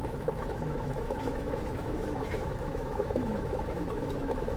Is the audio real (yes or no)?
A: no